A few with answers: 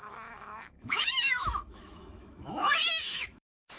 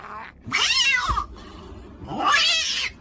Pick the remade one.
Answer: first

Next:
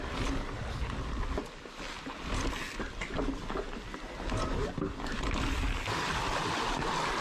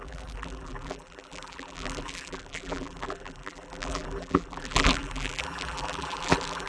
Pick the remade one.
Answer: second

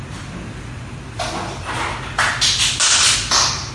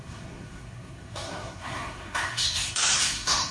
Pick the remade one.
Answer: second